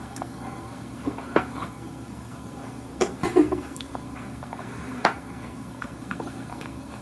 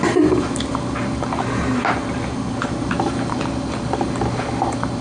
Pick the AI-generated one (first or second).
first